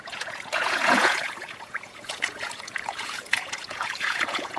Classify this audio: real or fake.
fake